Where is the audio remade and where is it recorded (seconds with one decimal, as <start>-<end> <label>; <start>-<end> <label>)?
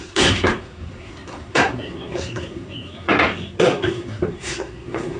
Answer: 0.0-5.2 remade